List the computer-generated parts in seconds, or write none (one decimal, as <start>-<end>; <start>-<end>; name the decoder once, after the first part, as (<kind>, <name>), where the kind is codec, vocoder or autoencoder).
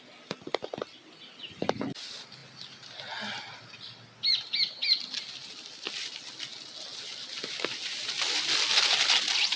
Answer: none